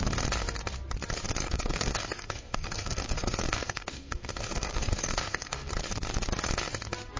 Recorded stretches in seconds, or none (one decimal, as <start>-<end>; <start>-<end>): 0.0-1.4; 5.7-7.2